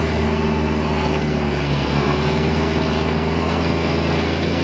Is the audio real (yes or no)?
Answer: no